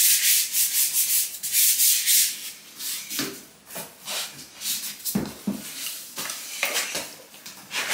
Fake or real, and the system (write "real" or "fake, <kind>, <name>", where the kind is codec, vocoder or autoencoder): real